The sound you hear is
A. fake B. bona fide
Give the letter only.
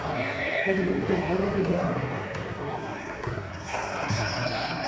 A